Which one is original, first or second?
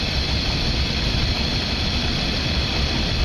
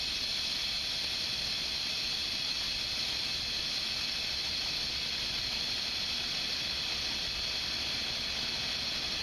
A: second